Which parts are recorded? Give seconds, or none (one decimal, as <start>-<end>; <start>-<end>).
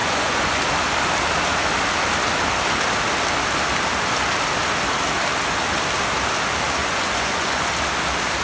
0.6-6.8; 7.7-8.4